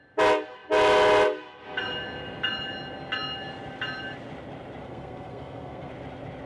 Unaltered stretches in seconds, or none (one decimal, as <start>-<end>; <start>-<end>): 0.0-4.8; 5.9-6.5

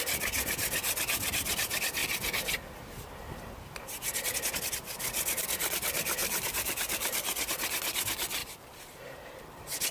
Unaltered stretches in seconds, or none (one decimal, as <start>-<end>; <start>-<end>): 0.0-6.2; 7.5-8.4; 9.4-9.9